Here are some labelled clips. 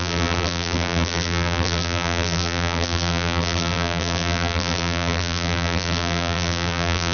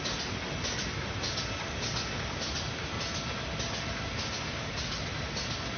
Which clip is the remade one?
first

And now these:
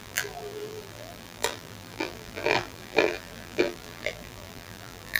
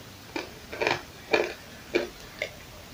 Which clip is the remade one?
first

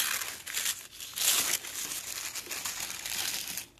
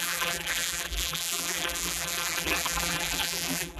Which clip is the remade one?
second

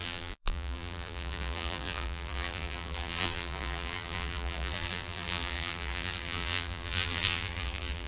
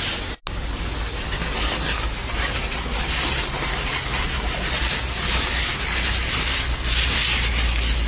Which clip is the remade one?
first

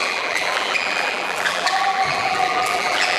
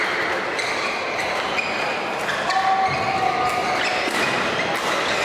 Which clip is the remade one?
first